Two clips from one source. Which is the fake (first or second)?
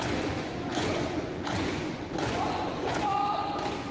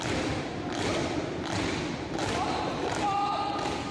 first